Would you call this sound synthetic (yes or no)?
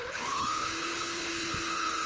yes